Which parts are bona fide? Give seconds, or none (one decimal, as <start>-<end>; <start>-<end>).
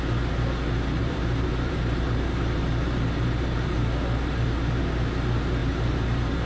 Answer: 0.0-1.0; 4.9-5.6